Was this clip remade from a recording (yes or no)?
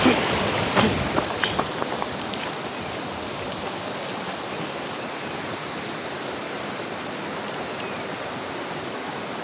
no